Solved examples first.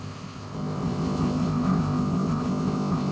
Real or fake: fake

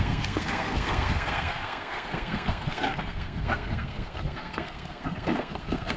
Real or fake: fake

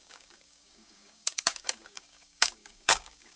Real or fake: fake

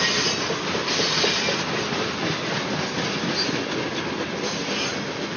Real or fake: real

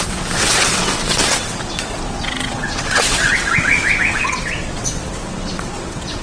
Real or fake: fake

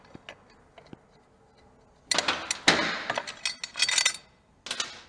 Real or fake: real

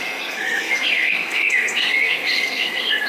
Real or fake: fake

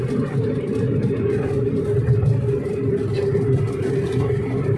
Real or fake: real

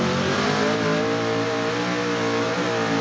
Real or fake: real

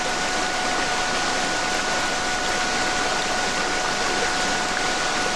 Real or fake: real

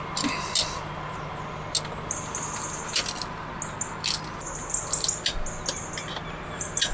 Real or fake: real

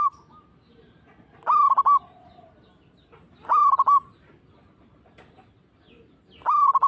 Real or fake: real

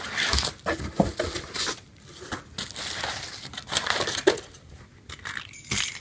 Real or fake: real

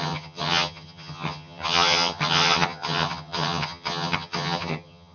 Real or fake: fake